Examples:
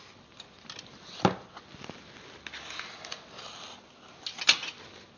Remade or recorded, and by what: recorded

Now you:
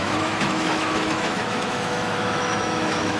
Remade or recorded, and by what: remade, autoencoder, DAC-VAE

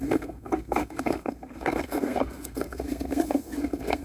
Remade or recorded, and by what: remade, codec, SNAC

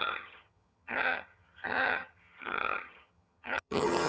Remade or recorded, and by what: remade, vocoder, HiFi-GAN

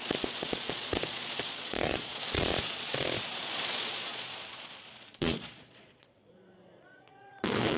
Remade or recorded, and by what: remade, vocoder, Vocos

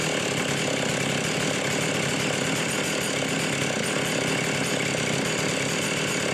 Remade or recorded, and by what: recorded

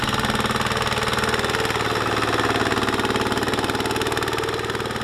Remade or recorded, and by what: recorded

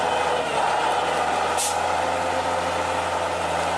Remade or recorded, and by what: recorded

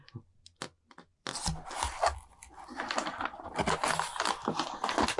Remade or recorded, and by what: recorded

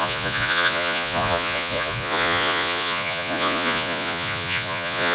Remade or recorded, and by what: remade, vocoder, Vocos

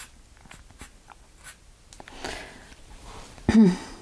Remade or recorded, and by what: recorded